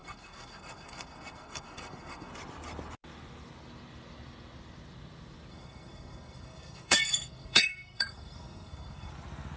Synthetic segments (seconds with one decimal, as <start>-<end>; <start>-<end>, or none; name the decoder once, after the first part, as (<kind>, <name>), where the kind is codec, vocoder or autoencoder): 0.0-2.3 (codec, SNAC); 5.5-9.1